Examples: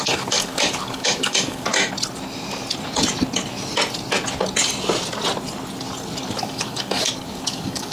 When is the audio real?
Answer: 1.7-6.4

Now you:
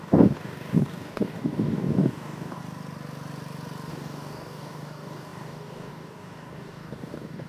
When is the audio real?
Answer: 2.6-3.9